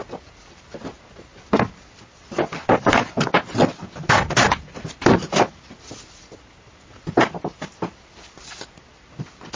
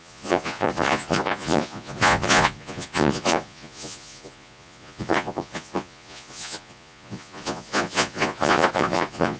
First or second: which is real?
first